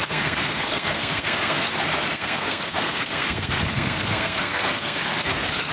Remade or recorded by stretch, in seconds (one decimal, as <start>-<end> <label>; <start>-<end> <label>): 0.0-1.7 remade; 1.7-2.1 recorded; 2.1-5.7 remade